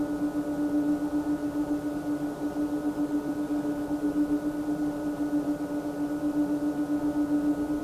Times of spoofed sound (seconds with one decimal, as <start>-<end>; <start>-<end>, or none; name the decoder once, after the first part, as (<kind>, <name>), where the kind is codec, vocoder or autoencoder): 1.4-6.1 (vocoder, BigVGAN v2)